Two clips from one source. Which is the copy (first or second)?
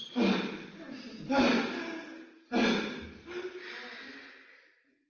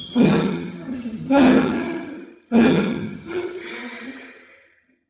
second